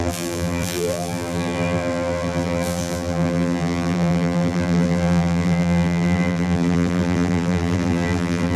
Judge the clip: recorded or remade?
remade